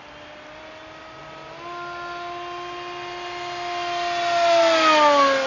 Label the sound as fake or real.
real